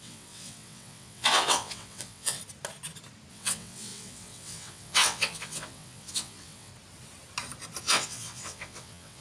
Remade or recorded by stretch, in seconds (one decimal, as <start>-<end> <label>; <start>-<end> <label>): 0.0-2.4 remade; 2.4-3.3 recorded; 3.3-6.7 remade; 6.7-7.8 recorded; 7.8-9.2 remade